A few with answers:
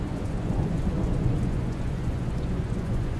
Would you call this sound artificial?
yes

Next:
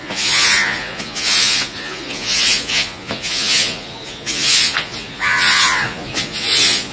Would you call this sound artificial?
yes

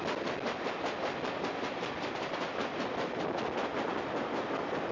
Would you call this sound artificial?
no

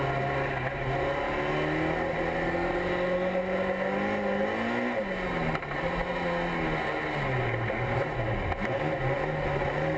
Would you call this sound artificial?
no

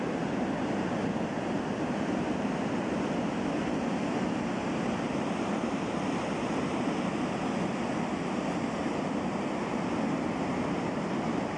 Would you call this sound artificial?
no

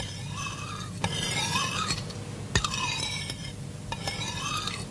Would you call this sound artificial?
no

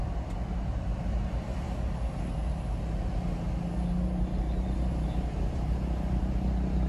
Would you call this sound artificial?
no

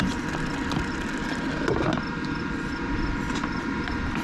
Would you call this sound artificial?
no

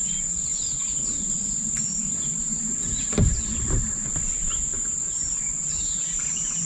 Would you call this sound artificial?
yes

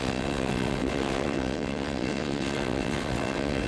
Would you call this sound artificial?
yes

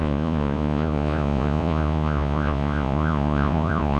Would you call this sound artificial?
yes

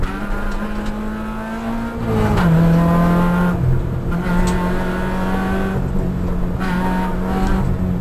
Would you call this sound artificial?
no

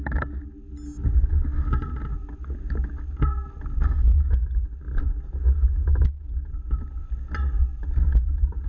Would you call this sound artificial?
no